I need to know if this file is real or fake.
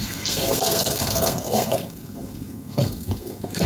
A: fake